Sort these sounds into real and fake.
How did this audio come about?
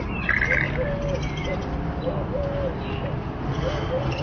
real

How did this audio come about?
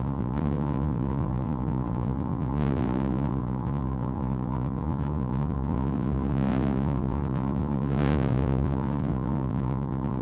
fake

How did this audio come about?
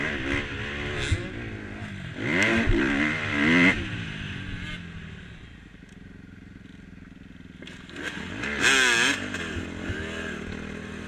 real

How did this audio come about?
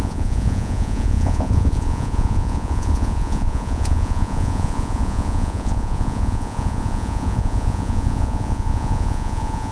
fake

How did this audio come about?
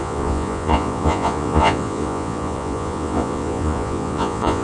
fake